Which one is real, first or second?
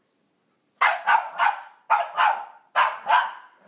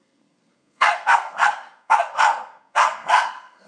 first